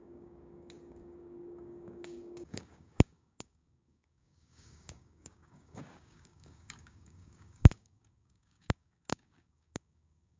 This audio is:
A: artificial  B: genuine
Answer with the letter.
A